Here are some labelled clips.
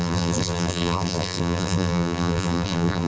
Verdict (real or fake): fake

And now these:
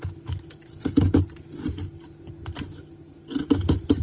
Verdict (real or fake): real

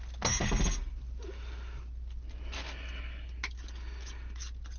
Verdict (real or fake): real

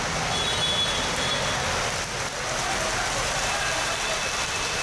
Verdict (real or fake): real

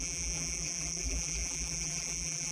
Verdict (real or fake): fake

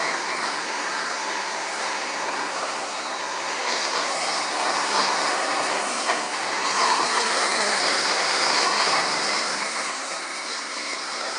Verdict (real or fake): fake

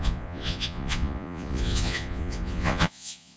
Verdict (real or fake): fake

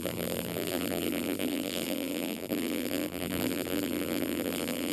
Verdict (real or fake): fake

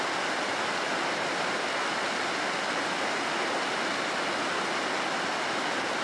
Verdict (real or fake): real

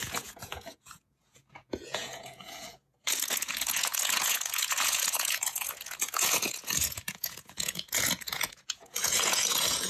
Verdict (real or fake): fake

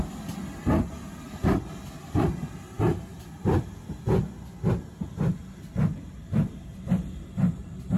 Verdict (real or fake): real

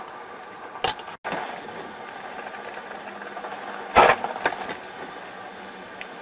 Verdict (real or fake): real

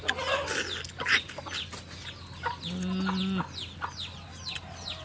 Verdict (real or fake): real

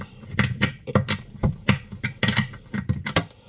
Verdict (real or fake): fake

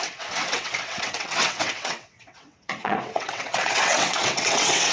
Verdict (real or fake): fake